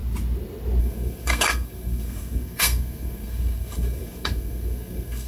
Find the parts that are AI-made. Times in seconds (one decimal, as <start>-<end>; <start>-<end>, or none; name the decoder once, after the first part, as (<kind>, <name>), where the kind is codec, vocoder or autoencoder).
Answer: 0.8-5.3 (codec, SNAC)